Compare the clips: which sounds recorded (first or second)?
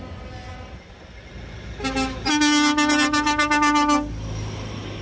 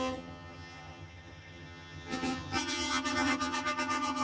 first